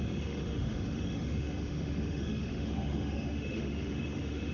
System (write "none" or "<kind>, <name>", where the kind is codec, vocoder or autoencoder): autoencoder, DAC-VAE